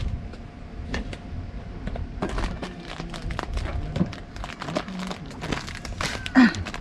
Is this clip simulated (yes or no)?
no